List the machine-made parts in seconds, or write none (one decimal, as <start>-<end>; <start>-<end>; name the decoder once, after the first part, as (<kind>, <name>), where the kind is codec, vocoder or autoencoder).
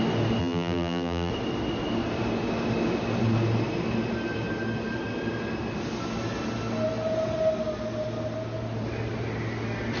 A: 0.4-1.3 (vocoder, BigVGAN v2)